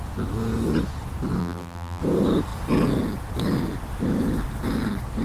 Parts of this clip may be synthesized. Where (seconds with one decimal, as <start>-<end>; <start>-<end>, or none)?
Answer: 1.4-2.0